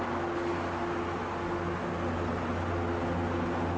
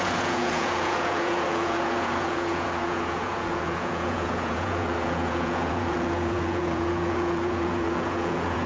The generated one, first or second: second